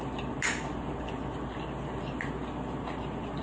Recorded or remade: recorded